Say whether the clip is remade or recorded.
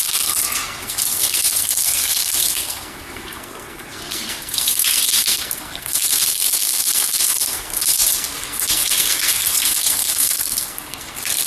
remade